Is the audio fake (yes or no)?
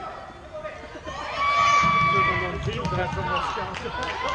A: no